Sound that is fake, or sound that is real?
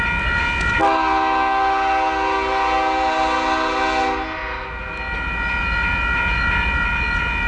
real